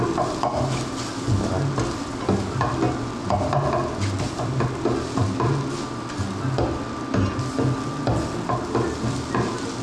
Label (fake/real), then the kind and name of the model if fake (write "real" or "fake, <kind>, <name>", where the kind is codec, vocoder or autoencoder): real